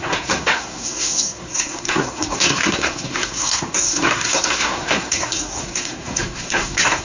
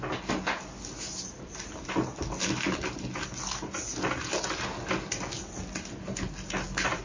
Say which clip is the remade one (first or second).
first